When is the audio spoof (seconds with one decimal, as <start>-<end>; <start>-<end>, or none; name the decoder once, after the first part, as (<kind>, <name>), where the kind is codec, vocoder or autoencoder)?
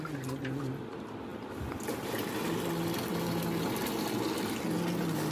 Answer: none